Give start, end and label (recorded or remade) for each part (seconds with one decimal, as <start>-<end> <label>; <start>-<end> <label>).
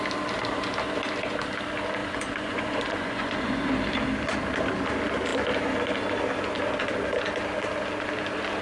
0.0-2.0 recorded; 2.0-3.7 remade; 3.7-8.6 recorded